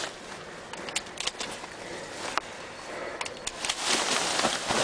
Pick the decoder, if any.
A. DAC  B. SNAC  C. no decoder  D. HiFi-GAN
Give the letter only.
C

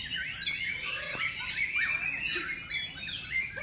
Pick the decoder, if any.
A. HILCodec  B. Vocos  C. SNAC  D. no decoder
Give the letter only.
D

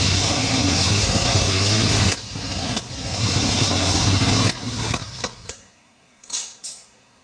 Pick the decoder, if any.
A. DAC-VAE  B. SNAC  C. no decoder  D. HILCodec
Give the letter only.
B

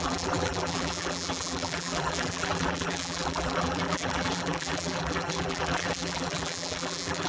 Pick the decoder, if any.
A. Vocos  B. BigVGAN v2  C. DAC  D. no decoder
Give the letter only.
B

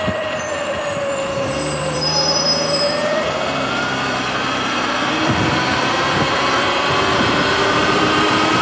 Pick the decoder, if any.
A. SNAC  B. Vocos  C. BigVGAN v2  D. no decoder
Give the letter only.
C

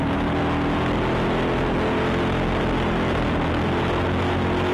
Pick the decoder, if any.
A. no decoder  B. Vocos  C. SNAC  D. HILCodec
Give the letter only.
A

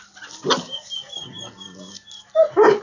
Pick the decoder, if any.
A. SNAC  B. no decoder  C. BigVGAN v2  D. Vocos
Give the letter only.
B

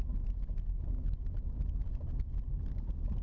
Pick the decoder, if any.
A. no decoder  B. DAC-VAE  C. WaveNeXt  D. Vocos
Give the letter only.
A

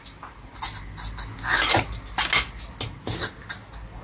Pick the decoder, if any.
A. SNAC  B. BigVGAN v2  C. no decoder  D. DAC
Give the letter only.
C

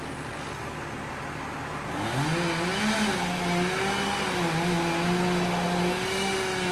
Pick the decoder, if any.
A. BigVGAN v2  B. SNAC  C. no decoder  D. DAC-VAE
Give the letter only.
C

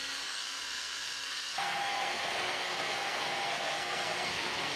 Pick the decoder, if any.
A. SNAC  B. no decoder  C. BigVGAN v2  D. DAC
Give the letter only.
A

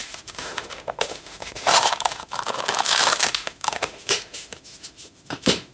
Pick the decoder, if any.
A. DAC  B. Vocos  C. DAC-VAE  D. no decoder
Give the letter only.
C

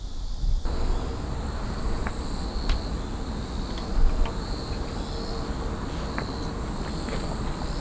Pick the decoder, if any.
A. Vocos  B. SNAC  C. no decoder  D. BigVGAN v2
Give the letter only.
C